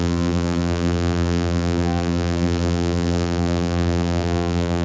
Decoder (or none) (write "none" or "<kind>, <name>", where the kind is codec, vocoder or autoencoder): vocoder, BigVGAN v2